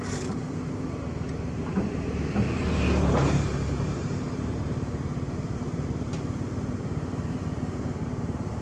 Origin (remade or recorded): remade